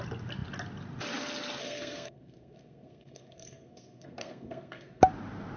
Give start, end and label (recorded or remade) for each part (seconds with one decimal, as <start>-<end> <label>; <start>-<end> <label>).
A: 0.0-1.6 recorded; 1.6-5.0 remade; 5.0-5.6 recorded